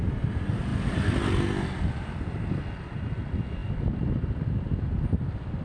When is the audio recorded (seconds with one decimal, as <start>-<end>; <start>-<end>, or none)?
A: 0.0-5.6